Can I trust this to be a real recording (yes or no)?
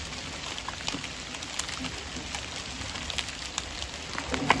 yes